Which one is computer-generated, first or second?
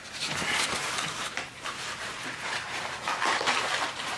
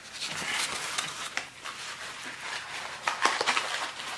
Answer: first